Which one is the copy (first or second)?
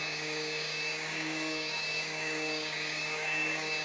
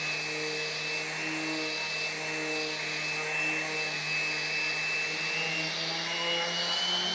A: first